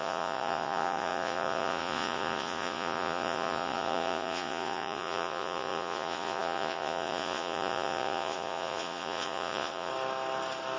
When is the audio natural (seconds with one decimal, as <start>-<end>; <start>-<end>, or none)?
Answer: 9.9-10.8

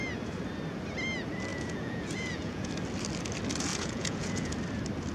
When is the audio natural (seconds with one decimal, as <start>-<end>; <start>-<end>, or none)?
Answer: 0.0-1.5; 2.7-3.7; 4.5-5.1

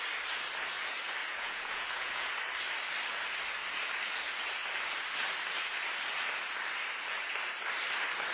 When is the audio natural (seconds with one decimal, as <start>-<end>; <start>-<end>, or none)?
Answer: 0.0-1.2; 2.3-8.3

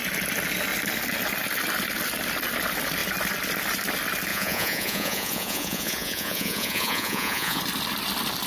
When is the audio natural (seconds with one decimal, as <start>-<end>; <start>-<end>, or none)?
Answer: 0.0-4.3; 7.6-8.5

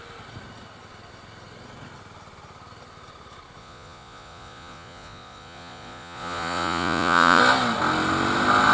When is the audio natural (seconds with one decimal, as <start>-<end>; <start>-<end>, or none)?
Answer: 0.0-3.6; 7.4-8.7